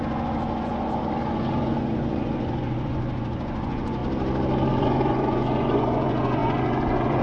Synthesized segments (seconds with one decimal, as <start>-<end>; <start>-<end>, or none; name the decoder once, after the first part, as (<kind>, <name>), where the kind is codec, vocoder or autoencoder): 0.0-4.0 (vocoder, Vocos); 4.7-7.2

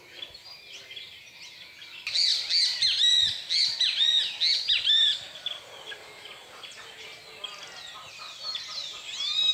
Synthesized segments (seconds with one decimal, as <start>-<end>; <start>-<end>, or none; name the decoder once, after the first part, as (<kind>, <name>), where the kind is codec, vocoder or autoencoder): none

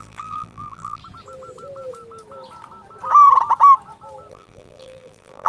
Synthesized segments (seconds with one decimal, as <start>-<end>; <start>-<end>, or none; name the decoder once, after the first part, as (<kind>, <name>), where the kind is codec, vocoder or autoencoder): 0.0-1.0 (vocoder, BigVGAN v2); 4.3-5.5

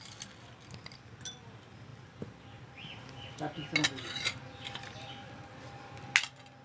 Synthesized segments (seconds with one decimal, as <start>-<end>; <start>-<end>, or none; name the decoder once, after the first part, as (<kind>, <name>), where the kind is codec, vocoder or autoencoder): none

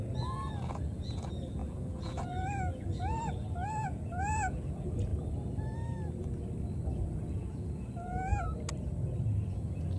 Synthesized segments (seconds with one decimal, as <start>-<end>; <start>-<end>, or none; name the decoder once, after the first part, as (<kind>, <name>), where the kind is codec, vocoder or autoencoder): 0.0-5.1 (vocoder, Vocos); 6.9-8.3; 9.5-10.0